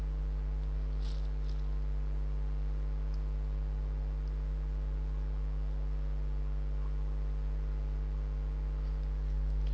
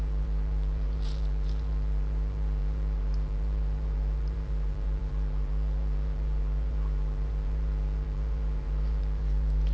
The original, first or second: first